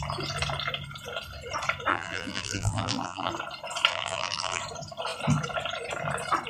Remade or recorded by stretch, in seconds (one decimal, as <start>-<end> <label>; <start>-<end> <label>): 0.0-1.9 recorded; 1.9-3.3 remade; 3.3-3.9 recorded; 3.9-4.6 remade; 4.6-6.5 recorded